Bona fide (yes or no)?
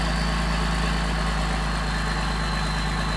yes